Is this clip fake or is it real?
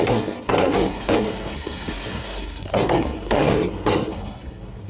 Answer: fake